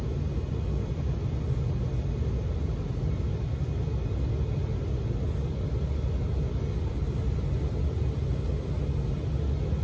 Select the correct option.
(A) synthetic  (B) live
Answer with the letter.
B